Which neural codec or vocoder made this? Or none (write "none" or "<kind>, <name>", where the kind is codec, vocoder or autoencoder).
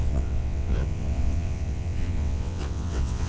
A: vocoder, WaveNeXt